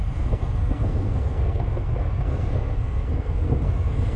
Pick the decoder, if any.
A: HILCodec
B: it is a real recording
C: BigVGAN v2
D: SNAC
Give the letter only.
D